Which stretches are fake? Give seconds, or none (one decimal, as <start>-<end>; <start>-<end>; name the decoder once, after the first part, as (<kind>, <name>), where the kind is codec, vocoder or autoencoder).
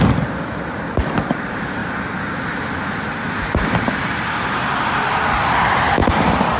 0.0-1.8 (vocoder, BigVGAN v2); 4.0-6.0